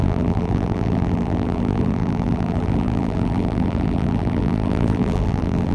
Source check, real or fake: fake